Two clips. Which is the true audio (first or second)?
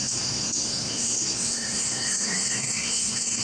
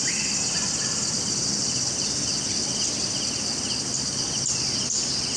second